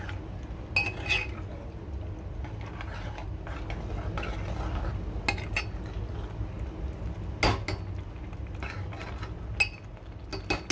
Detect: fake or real real